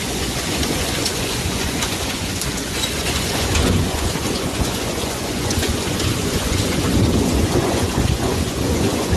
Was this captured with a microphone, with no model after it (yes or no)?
no